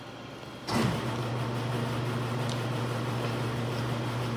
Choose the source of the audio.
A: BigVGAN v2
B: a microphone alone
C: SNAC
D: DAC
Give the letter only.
B